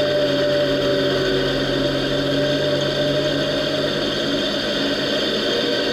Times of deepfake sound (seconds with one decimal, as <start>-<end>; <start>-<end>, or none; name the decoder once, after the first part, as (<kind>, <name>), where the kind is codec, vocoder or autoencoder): none